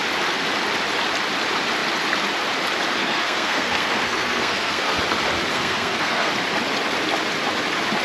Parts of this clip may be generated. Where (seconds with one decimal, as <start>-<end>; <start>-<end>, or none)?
3.0-5.0; 5.5-6.3